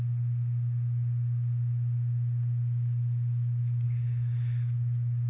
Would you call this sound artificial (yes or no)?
no